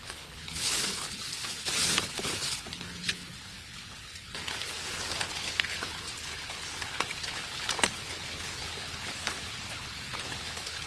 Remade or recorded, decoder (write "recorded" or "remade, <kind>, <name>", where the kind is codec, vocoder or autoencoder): remade, codec, HILCodec